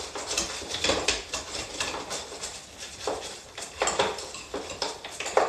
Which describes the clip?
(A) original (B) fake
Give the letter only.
B